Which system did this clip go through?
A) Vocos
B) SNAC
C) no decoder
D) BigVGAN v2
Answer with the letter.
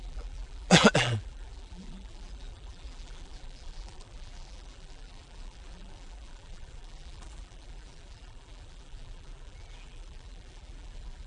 D